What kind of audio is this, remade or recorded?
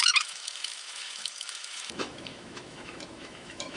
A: remade